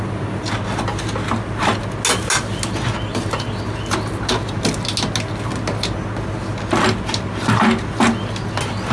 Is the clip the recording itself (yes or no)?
yes